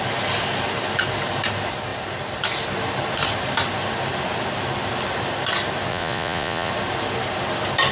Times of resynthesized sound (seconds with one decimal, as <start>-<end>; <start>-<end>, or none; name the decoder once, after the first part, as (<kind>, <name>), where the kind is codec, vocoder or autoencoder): 5.9-6.7 (vocoder, Vocos)